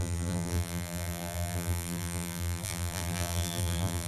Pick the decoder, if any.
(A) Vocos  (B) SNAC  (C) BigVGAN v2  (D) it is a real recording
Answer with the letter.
C